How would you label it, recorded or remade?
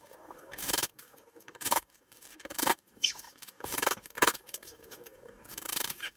remade